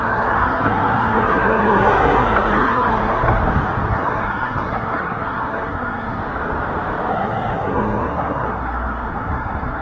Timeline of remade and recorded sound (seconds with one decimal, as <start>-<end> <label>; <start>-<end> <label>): 0.0-3.4 remade; 3.4-3.9 recorded; 3.9-6.2 remade; 6.2-7.1 recorded; 7.1-9.8 remade